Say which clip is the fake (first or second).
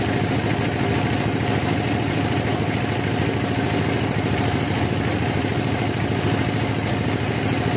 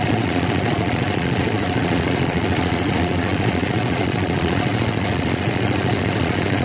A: second